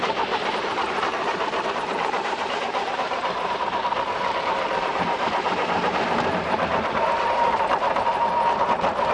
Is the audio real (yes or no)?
no